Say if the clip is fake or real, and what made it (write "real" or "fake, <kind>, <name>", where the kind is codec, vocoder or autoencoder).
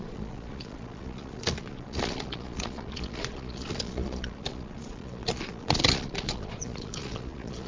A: fake, vocoder, Vocos